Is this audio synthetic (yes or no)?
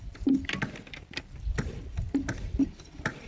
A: no